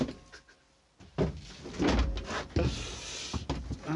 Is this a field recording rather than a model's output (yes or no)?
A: yes